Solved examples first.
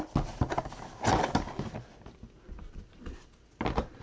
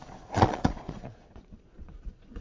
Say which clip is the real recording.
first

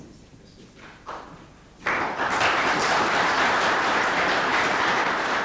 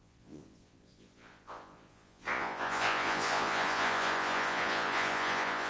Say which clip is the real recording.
first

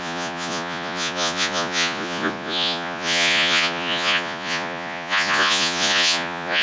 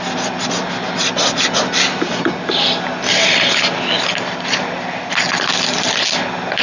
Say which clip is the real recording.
second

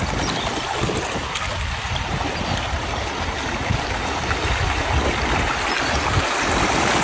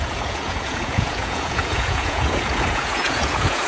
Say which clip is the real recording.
first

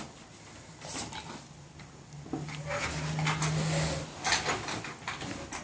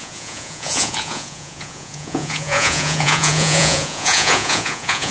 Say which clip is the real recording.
first